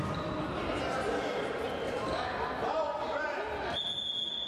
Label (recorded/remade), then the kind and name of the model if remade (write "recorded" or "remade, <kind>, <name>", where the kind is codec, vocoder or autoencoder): recorded